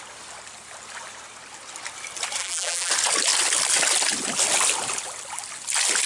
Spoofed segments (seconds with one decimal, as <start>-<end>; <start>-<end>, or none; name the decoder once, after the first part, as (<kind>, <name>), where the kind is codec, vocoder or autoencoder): 2.4-2.9 (vocoder, BigVGAN v2)